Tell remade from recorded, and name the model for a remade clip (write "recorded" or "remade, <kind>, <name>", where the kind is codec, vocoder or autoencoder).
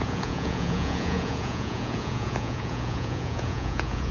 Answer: remade, vocoder, Vocos